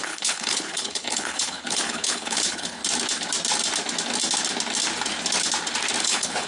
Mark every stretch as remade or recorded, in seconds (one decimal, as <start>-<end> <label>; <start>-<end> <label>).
0.0-2.8 remade; 2.8-6.0 recorded; 6.0-6.5 remade